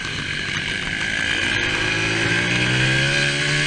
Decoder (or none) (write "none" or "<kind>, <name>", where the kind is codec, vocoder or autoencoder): none